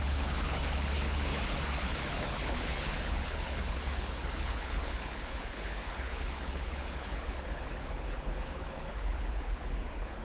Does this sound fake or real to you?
fake